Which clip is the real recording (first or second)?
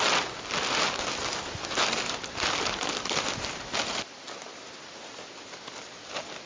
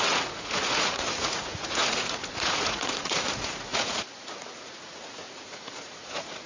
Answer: first